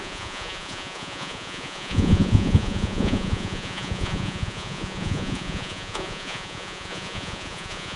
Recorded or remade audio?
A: remade